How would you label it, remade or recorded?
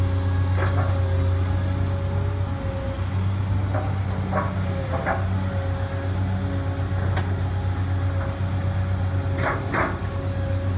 recorded